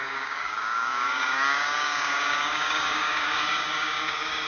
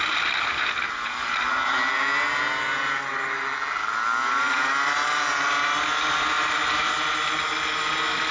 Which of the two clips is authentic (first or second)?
second